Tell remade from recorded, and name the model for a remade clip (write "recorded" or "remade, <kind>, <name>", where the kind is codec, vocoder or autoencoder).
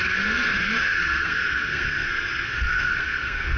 remade, codec, SNAC